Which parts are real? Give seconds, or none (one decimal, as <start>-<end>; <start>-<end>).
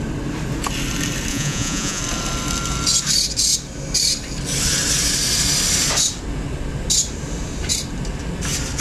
0.0-1.3; 2.0-8.8